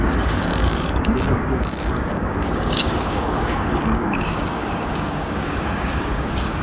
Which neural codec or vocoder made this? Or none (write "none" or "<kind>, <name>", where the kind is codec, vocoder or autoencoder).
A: codec, DAC